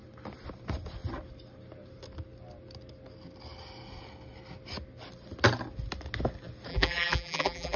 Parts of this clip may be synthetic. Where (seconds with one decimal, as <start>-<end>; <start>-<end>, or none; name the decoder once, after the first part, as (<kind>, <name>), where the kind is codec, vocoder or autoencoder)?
6.7-7.8 (vocoder, BigVGAN v2)